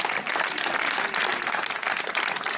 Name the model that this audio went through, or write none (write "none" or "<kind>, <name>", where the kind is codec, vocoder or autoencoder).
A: none